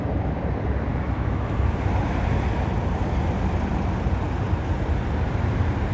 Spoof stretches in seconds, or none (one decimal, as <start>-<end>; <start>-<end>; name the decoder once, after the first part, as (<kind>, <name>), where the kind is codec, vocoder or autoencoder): 0.9-1.5 (autoencoder, DAC-VAE)